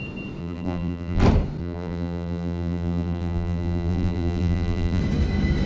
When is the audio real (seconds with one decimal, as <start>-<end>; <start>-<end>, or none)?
0.0-0.4; 1.2-1.6; 5.0-5.7